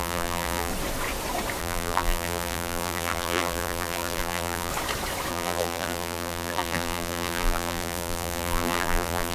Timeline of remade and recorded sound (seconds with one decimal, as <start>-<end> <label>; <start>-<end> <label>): 0.0-0.7 remade; 0.7-1.6 recorded; 1.6-4.7 remade; 4.7-5.3 recorded; 5.3-9.3 remade